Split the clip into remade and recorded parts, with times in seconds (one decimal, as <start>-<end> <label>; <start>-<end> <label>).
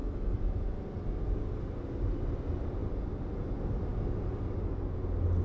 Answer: 0.0-5.4 recorded